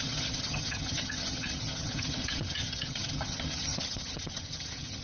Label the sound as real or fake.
fake